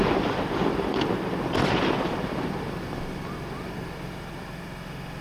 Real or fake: fake